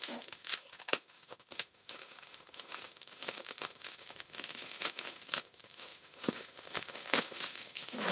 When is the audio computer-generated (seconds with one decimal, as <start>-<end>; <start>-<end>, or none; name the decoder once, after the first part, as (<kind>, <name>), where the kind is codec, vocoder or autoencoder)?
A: 0.0-8.1 (autoencoder, DAC-VAE)